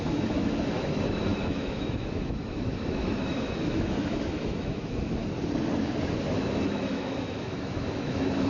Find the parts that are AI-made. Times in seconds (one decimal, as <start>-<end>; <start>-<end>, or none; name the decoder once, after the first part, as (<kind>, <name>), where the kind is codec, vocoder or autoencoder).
0.0-5.2 (autoencoder, DAC-VAE); 6.3-8.5